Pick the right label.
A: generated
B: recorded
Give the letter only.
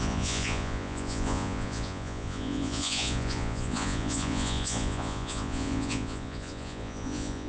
A